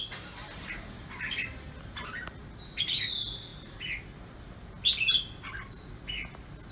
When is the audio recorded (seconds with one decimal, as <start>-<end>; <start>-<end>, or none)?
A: 0.0-6.7